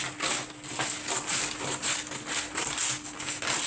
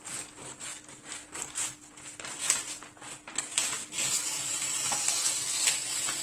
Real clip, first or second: first